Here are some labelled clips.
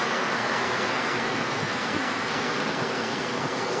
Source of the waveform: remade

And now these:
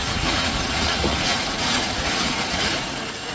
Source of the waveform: remade